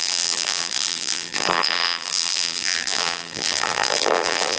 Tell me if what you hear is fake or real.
fake